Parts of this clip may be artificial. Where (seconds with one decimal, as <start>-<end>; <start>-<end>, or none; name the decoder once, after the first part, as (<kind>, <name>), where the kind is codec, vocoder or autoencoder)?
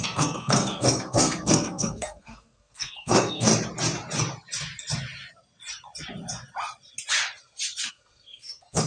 0.0-3.5 (codec, SNAC); 7.9-8.9